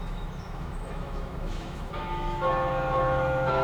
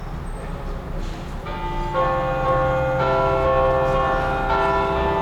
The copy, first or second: first